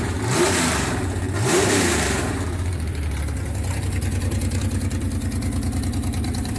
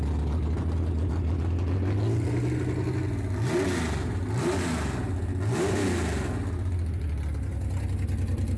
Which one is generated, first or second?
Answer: first